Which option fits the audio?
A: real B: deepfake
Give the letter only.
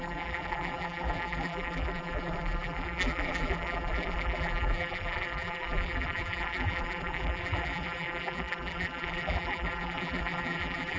B